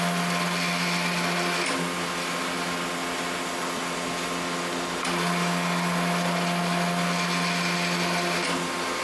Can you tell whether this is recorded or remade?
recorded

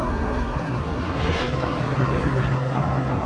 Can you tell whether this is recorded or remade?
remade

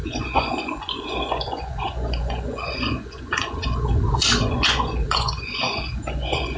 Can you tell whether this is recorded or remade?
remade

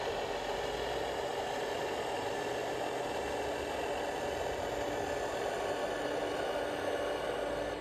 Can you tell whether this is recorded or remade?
recorded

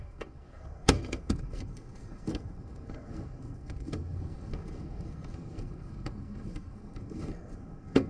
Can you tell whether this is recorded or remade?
remade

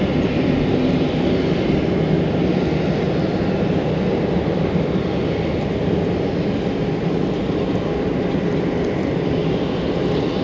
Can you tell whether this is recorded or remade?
recorded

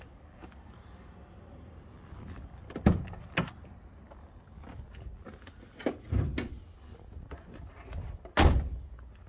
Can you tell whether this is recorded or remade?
recorded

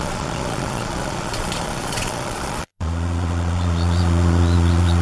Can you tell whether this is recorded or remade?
remade